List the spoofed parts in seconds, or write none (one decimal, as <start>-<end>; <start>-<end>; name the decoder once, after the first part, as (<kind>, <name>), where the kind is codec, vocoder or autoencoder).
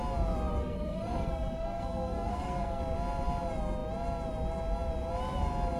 0.6-2.8 (codec, SNAC)